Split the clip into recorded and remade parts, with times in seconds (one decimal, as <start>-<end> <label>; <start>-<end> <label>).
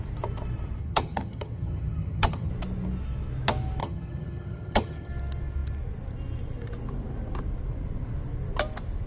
0.0-0.8 recorded; 0.8-2.5 remade; 2.5-3.8 recorded; 3.8-5.1 remade; 5.1-9.1 recorded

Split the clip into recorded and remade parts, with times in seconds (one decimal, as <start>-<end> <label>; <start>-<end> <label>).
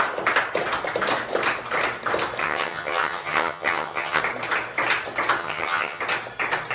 0.0-2.4 recorded; 2.4-4.2 remade; 4.2-5.4 recorded; 5.4-6.0 remade; 6.0-6.7 recorded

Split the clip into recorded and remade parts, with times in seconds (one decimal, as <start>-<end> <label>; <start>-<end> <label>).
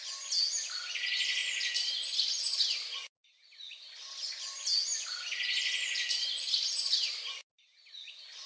0.0-8.5 recorded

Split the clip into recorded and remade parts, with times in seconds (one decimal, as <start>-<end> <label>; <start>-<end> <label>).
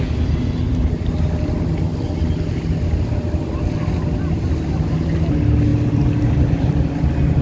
0.0-7.4 recorded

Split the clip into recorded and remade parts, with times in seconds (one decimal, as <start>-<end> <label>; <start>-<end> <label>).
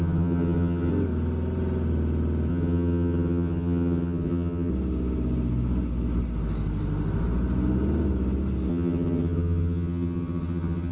0.0-0.9 remade; 0.9-2.5 recorded; 2.5-4.7 remade; 4.7-8.7 recorded; 8.7-10.9 remade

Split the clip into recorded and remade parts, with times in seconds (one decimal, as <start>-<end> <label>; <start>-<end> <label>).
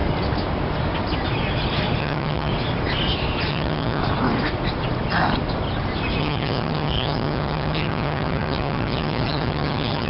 0.0-2.0 recorded; 2.0-2.5 remade; 2.5-3.5 recorded; 3.5-4.0 remade; 4.0-6.2 recorded; 6.2-10.1 remade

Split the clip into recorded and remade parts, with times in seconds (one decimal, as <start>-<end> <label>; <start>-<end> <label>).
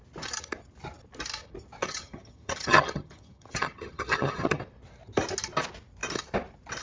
0.0-1.8 recorded; 1.8-4.6 remade; 4.6-6.8 recorded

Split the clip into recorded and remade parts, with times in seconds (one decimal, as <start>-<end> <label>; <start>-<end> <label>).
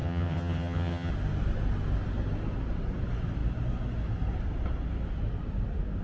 0.0-1.1 remade; 1.1-6.0 recorded